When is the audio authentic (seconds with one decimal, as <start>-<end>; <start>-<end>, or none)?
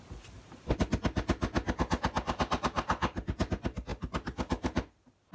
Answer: 0.0-3.9